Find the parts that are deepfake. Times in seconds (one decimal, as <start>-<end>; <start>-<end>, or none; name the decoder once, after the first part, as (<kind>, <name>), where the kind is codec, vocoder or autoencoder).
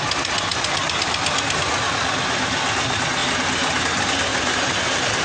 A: 3.2-3.8 (vocoder, BigVGAN v2); 4.3-4.8